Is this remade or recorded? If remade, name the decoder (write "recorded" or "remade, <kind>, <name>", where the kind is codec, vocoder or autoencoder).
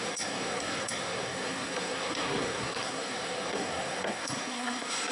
remade, codec, SNAC